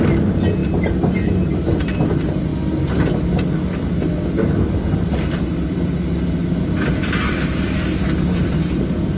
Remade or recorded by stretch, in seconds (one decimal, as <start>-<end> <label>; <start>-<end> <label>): 0.0-9.2 recorded